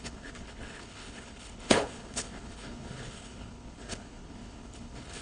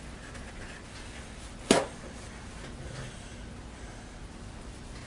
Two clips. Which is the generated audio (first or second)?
first